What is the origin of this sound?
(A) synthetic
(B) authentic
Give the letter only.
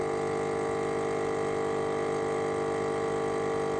B